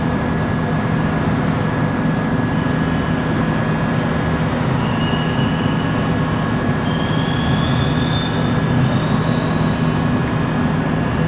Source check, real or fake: real